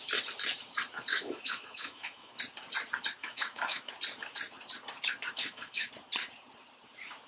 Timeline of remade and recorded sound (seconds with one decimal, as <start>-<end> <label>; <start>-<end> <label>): 0.0-1.1 recorded; 1.1-2.4 remade; 2.4-3.2 recorded; 3.2-3.9 remade; 3.9-5.4 recorded; 5.4-5.9 remade; 5.9-7.3 recorded